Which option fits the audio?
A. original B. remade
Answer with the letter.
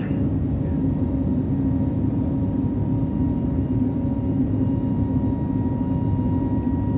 A